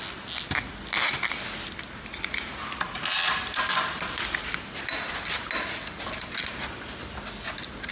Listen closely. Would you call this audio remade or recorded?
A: recorded